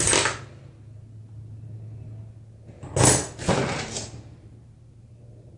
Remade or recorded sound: recorded